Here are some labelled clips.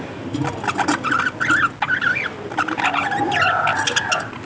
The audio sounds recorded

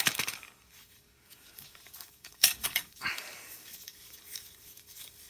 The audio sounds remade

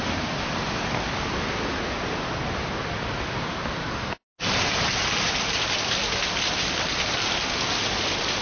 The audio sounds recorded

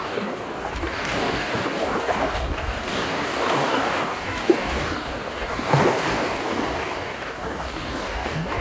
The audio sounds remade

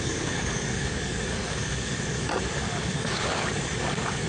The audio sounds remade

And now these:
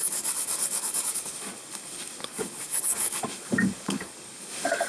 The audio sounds remade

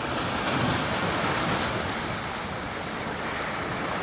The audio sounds recorded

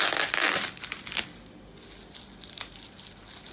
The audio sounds recorded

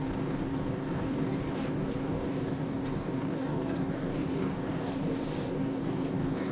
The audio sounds remade